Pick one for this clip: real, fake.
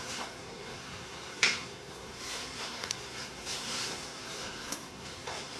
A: fake